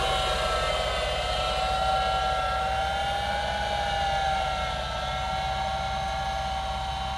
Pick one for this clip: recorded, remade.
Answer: recorded